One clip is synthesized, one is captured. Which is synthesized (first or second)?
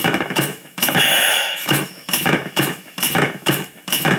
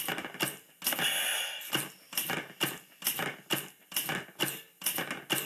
first